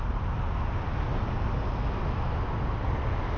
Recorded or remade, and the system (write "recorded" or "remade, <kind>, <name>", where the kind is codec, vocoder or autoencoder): recorded